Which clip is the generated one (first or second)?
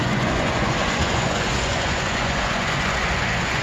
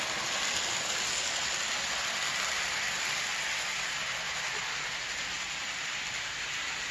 first